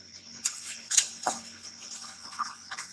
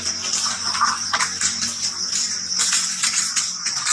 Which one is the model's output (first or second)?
first